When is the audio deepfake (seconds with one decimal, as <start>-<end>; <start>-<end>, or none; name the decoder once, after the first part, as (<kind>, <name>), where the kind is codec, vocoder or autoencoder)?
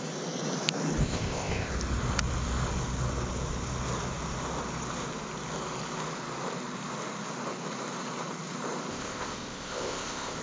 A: 1.0-1.7 (codec, ZipCodec); 8.9-10.4